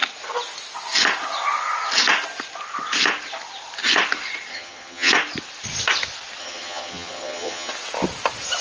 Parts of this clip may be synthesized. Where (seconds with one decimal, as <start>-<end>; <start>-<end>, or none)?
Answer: 4.5-5.1; 6.4-7.7